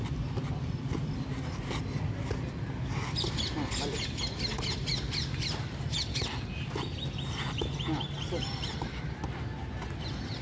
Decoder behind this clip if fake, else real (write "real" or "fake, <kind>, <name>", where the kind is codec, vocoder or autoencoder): real